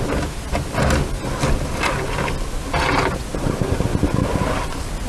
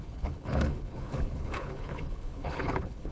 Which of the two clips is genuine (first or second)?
first